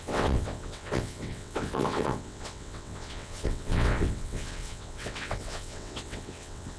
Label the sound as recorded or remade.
remade